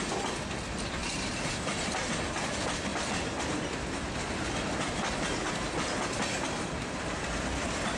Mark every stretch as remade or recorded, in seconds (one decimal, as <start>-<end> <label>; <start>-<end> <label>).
0.0-1.0 recorded; 1.0-2.3 remade; 2.3-8.0 recorded